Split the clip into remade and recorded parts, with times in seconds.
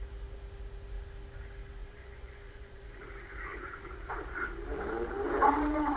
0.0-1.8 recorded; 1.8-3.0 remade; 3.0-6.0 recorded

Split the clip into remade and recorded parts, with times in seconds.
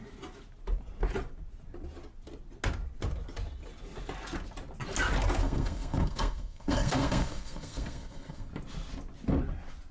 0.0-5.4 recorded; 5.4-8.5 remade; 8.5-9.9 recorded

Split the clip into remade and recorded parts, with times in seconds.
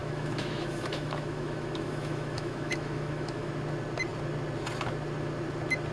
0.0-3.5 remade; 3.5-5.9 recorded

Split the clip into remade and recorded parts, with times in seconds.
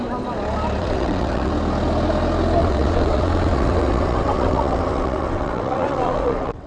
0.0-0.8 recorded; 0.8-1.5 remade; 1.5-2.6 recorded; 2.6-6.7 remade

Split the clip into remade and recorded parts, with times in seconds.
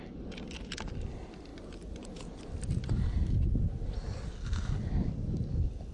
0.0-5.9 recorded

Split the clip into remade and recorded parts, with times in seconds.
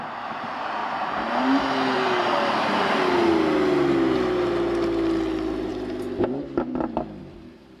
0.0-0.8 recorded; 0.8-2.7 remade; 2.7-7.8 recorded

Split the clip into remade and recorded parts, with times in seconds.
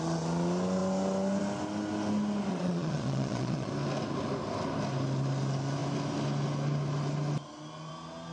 0.0-2.5 recorded; 2.5-3.7 remade; 3.7-8.3 recorded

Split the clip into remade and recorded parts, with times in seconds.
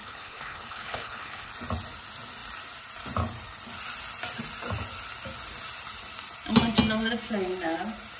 0.0-1.5 remade; 1.5-8.2 recorded